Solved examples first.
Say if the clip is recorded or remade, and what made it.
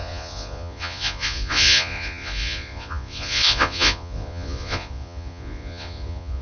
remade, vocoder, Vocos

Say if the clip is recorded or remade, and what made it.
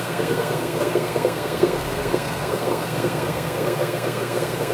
remade, codec, SNAC